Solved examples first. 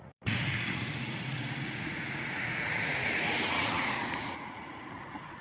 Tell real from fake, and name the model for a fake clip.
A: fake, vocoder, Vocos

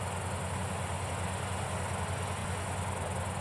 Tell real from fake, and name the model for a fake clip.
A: real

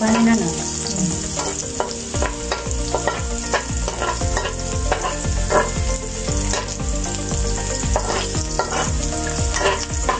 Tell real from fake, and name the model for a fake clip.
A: real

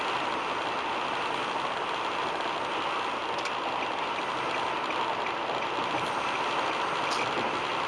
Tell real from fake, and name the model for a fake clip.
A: real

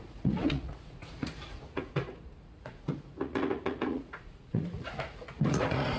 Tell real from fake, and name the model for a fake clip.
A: fake, vocoder, Vocos